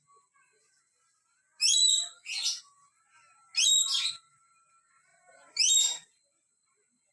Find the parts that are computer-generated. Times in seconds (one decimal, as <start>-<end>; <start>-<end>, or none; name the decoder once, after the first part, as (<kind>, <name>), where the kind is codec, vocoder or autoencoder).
5.1-7.1 (vocoder, BigVGAN v2)